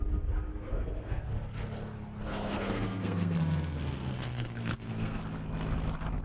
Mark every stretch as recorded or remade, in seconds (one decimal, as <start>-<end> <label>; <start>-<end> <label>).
0.0-0.5 recorded; 0.5-1.3 remade; 1.3-2.3 recorded; 2.3-5.2 remade; 5.2-6.2 recorded